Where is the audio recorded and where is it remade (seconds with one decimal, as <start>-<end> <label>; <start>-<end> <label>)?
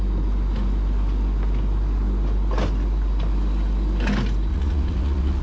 0.0-4.5 recorded; 4.5-5.4 remade